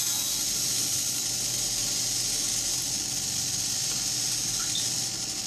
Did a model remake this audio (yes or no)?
no